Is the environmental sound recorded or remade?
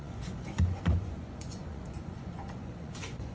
remade